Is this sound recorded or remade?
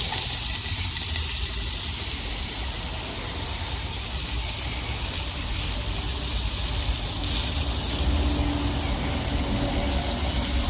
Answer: recorded